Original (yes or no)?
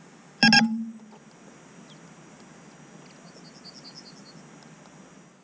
yes